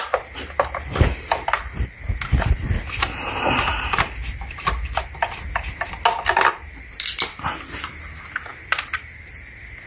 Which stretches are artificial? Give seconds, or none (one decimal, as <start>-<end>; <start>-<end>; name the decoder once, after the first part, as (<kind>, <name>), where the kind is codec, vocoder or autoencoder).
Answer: none